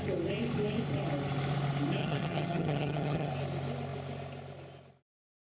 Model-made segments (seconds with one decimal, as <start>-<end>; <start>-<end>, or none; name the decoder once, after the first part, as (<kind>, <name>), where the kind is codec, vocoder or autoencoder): 2.0-3.3 (vocoder, HiFi-GAN)